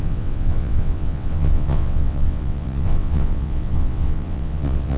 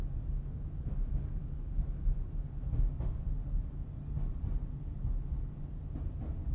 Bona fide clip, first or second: second